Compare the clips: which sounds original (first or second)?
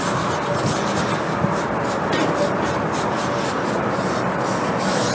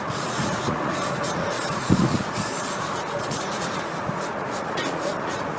first